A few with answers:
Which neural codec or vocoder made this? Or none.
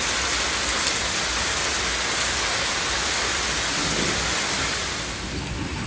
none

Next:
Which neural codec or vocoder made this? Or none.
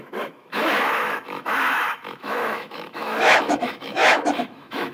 autoencoder, DAC-VAE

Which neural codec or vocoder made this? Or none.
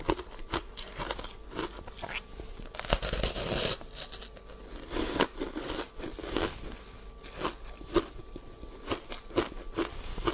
none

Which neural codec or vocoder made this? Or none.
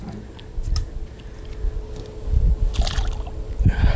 none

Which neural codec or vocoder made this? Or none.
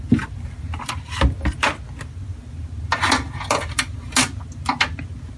none